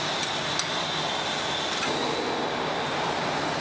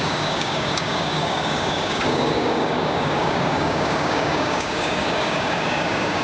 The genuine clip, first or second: first